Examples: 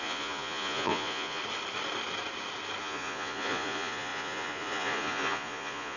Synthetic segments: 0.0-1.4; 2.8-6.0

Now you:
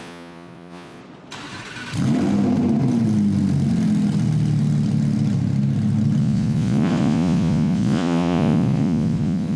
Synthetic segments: 0.0-1.0; 6.2-9.6

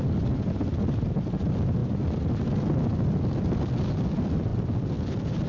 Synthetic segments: none

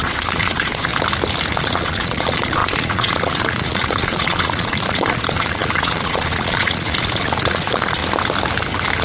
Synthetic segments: 0.0-0.9; 1.5-8.0